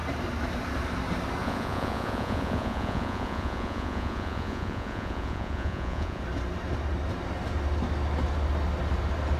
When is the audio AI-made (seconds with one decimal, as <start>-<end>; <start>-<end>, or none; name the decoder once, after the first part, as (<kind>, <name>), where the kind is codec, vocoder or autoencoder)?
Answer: 1.4-6.2 (vocoder, Vocos)